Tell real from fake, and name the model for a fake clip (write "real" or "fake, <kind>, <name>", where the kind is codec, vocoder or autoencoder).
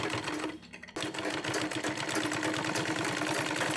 real